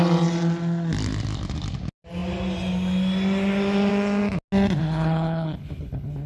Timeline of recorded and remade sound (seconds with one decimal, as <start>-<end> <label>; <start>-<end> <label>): 0.0-4.8 recorded; 4.8-6.3 remade